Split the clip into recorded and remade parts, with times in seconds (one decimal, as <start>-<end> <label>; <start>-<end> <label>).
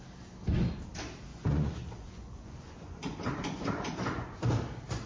0.0-1.3 recorded; 1.3-4.4 remade; 4.4-5.1 recorded